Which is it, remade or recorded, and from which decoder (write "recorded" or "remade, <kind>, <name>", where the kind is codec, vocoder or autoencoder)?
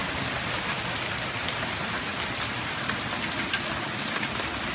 recorded